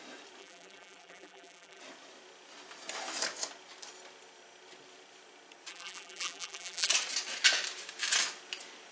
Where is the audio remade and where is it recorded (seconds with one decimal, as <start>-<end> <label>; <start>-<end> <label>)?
0.0-0.4 recorded; 0.4-1.8 remade; 1.8-5.7 recorded; 5.7-6.9 remade; 6.9-8.9 recorded